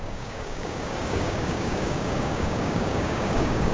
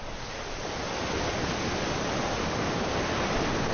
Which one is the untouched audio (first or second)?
second